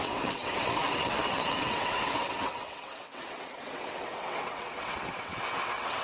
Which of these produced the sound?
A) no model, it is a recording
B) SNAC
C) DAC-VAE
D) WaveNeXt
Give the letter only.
D